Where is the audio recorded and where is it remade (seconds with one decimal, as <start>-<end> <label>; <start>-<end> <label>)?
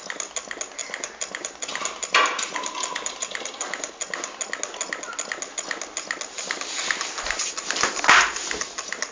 0.0-0.8 recorded; 0.8-3.5 remade; 3.5-9.1 recorded